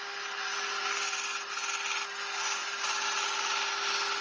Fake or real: real